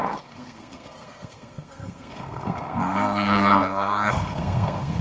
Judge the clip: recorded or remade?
remade